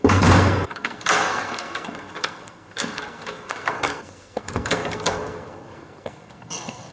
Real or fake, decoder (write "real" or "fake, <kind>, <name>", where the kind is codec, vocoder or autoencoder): fake, codec, SNAC